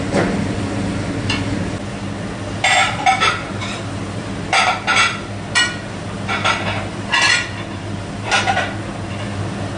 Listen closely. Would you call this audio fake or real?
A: real